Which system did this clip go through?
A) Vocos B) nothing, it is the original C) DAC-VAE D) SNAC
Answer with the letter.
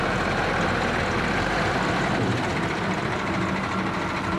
B